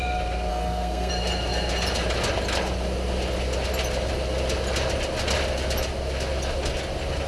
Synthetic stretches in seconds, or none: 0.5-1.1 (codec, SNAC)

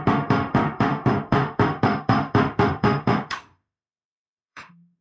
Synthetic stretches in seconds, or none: 0.0-5.0 (autoencoder, DAC-VAE)

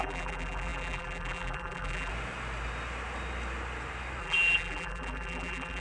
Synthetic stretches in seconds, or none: 0.0-2.1 (vocoder, BigVGAN v2); 4.2-5.8

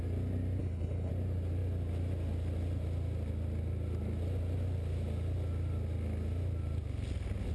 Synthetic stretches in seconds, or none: 0.6-1.1 (codec, HILCodec)

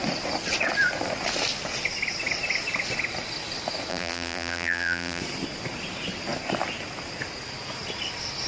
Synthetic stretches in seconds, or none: 3.9-5.2 (vocoder, BigVGAN v2)

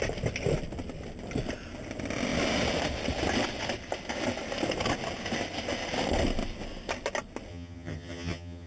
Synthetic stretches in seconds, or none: 7.5-8.7 (vocoder, HiFi-GAN)

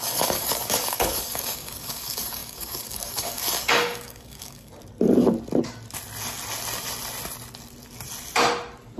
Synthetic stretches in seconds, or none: 0.0-4.7 (codec, DAC)

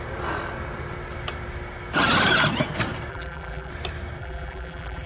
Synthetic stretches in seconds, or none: 3.1-3.7 (vocoder, BigVGAN v2); 4.2-5.1